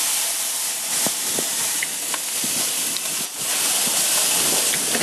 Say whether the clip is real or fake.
real